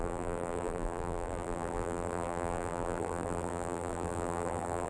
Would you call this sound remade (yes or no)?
yes